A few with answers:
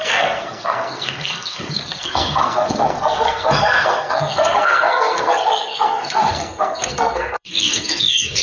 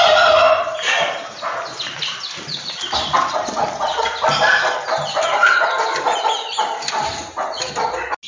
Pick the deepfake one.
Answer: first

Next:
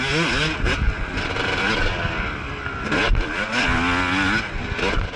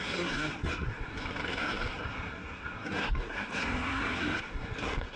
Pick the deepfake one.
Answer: second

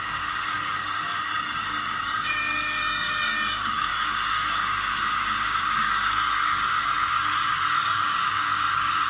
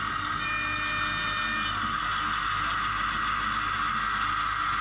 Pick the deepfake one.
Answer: first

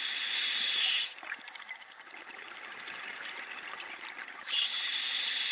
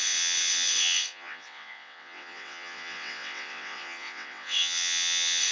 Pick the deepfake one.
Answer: second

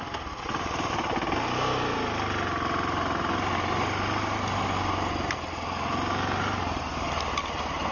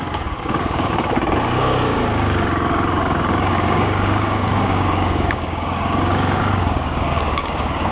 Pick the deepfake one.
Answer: second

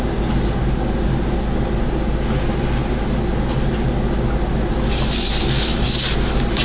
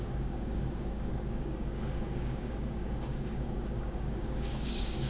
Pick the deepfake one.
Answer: second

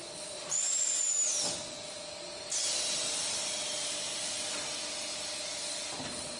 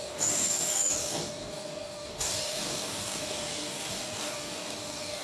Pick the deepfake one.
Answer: second